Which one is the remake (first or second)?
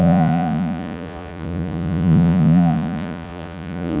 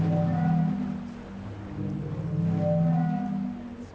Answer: first